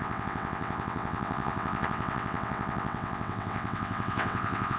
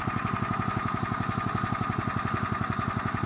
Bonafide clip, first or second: second